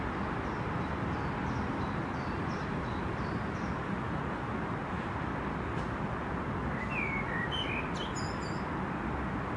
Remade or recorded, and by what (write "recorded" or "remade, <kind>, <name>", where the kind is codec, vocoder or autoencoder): recorded